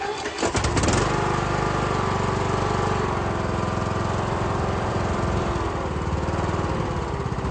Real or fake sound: real